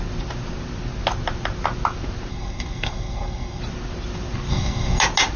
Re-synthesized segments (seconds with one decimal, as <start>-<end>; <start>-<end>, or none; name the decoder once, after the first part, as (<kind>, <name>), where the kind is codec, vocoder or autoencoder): 2.3-3.6 (codec, SNAC); 4.5-5.0